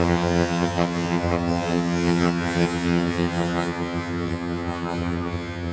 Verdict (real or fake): fake